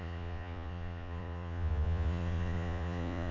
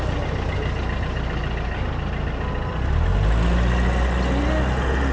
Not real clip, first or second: first